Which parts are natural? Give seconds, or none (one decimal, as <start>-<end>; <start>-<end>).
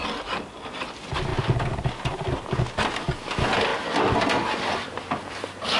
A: 0.0-5.8